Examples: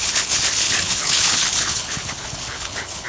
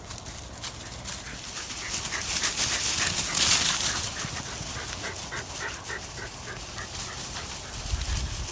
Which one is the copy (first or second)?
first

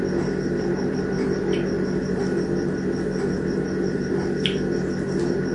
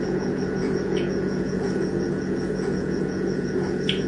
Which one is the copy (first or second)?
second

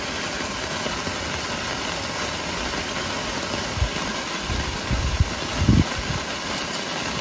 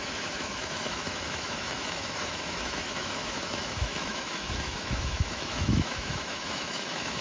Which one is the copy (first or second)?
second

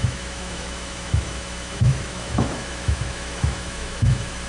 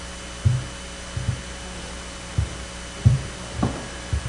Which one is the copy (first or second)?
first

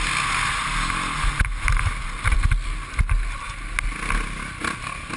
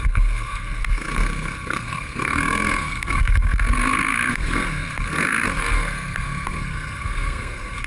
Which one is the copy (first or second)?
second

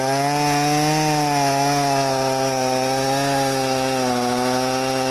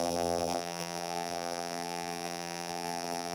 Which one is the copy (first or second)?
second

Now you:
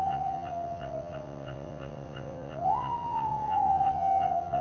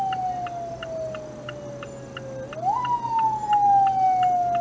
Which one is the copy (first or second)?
first